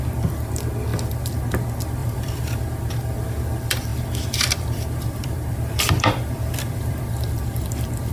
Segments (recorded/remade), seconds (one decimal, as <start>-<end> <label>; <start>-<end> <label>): 0.0-2.0 recorded; 2.0-2.6 remade; 2.6-3.9 recorded; 3.9-8.1 remade